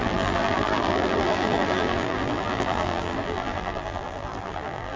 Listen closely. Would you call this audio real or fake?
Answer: fake